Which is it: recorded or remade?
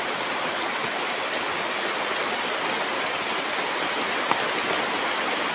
recorded